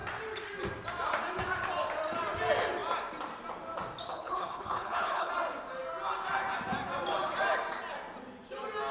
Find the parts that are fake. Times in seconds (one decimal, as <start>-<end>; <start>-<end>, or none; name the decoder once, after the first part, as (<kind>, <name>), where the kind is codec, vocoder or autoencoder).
4.1-5.3 (codec, HILCodec)